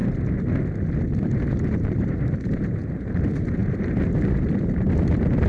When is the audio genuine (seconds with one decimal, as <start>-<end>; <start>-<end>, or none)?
0.0-1.3